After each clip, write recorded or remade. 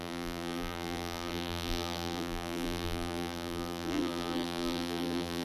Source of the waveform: remade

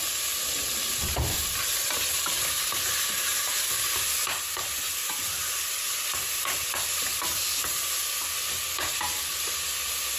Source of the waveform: recorded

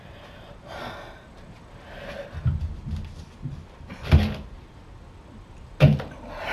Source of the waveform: recorded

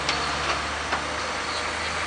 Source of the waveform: recorded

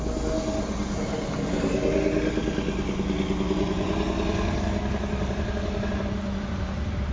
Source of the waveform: recorded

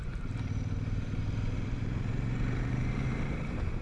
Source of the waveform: remade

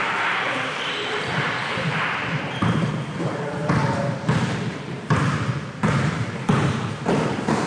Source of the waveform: remade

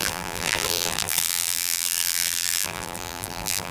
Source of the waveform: remade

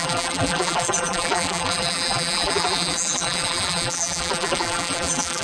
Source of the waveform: remade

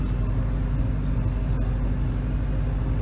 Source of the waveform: recorded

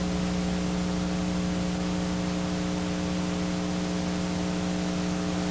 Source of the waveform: recorded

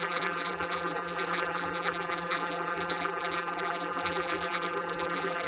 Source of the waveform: remade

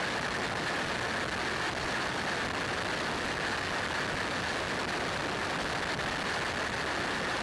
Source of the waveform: recorded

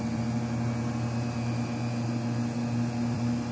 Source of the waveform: remade